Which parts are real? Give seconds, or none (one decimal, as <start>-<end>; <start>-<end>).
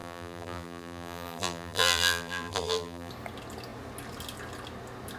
3.1-5.2